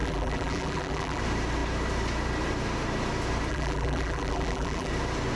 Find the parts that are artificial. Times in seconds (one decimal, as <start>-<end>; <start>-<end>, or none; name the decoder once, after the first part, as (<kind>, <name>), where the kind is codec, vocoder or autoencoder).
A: 0.0-1.2 (vocoder, BigVGAN v2); 3.5-4.9